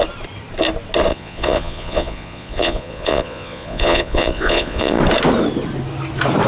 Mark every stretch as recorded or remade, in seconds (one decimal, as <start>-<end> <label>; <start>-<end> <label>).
0.0-1.1 recorded; 1.1-5.0 remade; 5.0-6.5 recorded